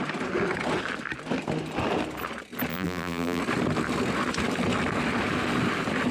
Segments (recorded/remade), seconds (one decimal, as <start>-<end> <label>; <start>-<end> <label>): 0.0-2.7 recorded; 2.7-3.4 remade; 3.4-6.1 recorded